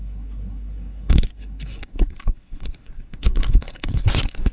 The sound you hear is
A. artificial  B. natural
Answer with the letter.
A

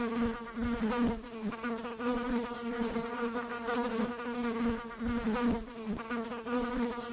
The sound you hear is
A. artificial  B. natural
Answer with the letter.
B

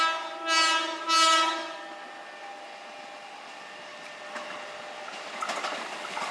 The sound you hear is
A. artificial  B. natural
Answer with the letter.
B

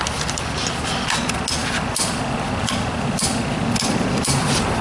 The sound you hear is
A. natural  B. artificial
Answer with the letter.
A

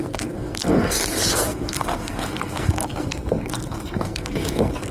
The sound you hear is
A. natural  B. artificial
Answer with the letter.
B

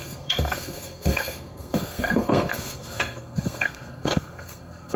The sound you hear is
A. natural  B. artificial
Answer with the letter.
B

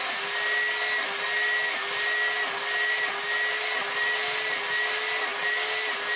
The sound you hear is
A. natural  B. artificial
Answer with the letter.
A